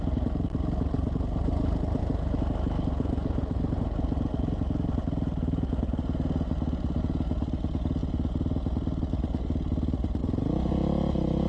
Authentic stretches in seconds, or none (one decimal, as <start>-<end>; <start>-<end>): 0.0-11.5